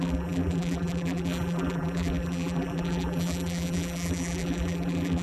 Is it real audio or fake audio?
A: fake